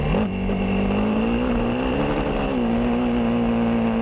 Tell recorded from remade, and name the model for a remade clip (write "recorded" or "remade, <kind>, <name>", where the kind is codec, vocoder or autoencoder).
recorded